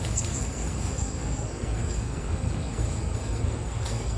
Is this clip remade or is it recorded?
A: remade